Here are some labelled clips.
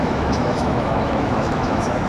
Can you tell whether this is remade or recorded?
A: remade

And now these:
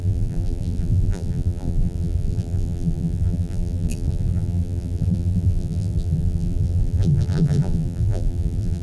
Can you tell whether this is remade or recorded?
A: remade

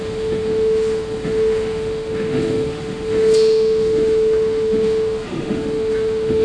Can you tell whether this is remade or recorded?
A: remade